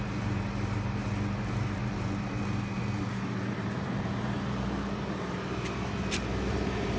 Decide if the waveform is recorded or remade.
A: remade